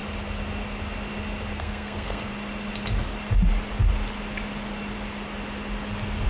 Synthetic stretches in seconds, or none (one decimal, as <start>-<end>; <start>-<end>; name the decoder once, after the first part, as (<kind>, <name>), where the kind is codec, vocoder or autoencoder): 1.5-2.3 (codec, SNAC)